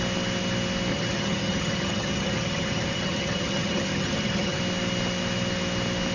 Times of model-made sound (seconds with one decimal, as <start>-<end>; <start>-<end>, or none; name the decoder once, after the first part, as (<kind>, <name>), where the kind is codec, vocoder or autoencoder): 0.9-4.6 (vocoder, HiFi-GAN)